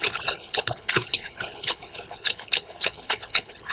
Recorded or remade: remade